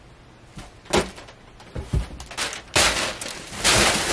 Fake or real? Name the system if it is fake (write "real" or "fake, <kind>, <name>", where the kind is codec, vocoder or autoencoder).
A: real